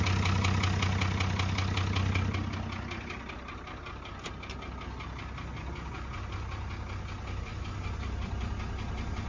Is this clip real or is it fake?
real